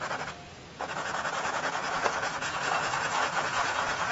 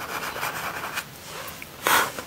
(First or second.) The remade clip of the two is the first